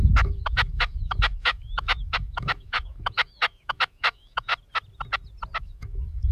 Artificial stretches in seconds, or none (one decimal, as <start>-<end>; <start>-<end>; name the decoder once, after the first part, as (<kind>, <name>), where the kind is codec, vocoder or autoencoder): 0.0-4.5 (autoencoder, DAC-VAE); 5.6-6.3